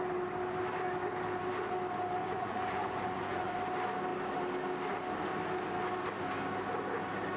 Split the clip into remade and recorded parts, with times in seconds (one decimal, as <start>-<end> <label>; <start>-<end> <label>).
0.0-2.2 recorded; 2.2-3.5 remade; 3.5-7.4 recorded